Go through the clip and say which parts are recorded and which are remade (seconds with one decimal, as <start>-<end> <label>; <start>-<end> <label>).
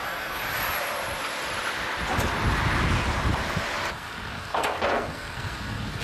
0.0-0.4 remade; 0.4-3.9 recorded; 3.9-6.0 remade